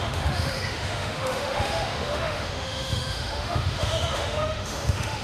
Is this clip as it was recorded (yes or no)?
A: no